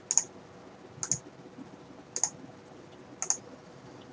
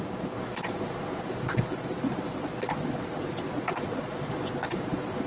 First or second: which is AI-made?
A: second